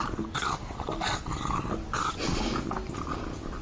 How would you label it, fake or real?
real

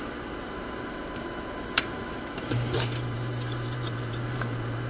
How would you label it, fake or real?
fake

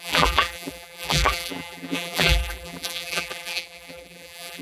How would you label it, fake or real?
fake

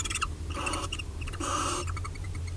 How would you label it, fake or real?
fake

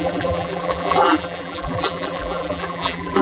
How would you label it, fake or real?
fake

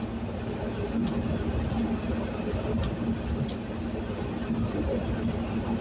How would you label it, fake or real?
real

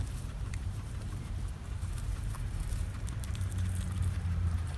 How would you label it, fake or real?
fake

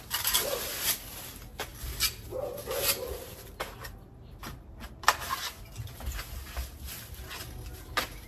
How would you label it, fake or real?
real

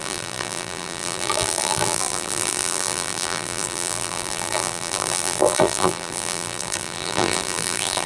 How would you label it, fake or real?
fake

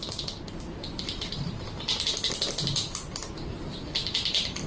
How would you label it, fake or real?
real